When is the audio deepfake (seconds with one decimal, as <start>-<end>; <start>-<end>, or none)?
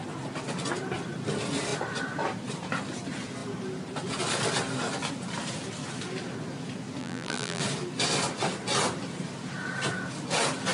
7.0-7.6